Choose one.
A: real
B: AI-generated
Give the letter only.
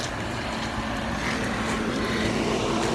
A